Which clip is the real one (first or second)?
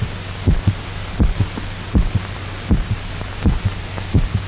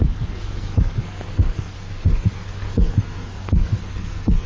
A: first